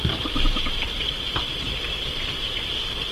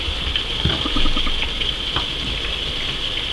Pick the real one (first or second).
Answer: second